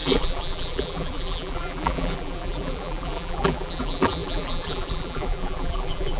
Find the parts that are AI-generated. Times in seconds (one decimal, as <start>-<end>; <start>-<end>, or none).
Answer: 0.0-6.2